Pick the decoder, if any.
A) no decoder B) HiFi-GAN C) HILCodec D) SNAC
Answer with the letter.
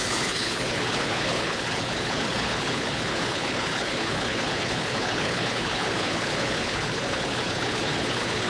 C